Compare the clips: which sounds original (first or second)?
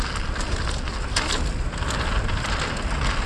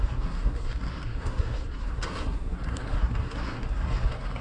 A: first